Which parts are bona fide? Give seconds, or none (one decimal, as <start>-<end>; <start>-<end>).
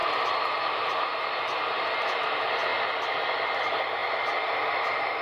2.7-3.6